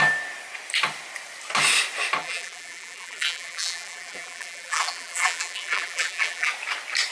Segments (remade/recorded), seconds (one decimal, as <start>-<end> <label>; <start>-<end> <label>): 0.0-2.2 recorded; 2.2-6.5 remade; 6.5-7.1 recorded